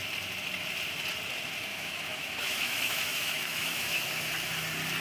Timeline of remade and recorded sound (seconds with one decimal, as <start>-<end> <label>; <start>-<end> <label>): 0.0-1.7 recorded; 1.7-4.3 remade; 4.3-5.0 recorded